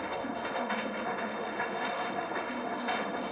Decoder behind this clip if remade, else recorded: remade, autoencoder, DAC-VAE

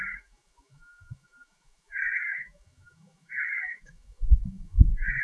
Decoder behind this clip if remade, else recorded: remade, autoencoder, DAC-VAE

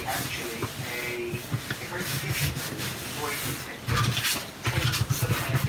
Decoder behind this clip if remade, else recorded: recorded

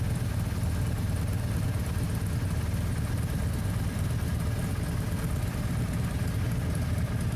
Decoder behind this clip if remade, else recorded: recorded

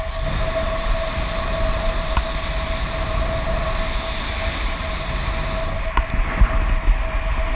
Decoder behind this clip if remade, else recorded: recorded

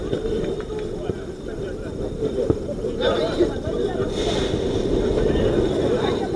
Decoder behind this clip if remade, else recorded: recorded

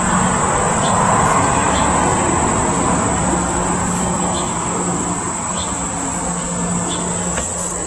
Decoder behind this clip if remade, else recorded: recorded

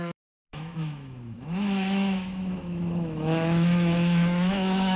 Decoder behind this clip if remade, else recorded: remade, autoencoder, DAC-VAE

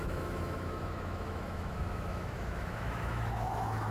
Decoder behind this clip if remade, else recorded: remade, autoencoder, DAC-VAE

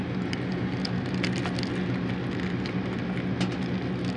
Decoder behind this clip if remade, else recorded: recorded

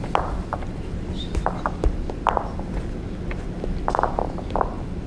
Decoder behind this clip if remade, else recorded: recorded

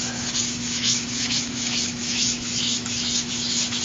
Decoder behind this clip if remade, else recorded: remade, autoencoder, DAC-VAE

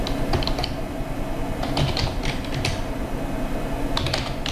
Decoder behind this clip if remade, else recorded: recorded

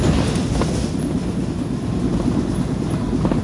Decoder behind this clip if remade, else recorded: recorded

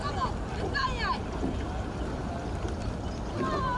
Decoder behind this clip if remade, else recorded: recorded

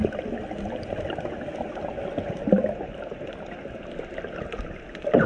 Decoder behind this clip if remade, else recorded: recorded